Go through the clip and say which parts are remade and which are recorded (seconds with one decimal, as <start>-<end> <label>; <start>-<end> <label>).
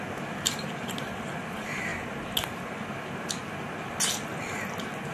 0.0-5.1 recorded